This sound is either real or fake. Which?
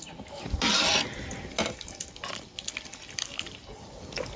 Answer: real